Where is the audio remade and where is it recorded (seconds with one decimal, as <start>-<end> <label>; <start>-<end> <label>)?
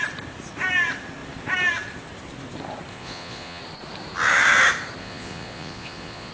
0.0-2.9 recorded; 2.9-3.6 remade; 3.6-5.0 recorded; 5.0-6.3 remade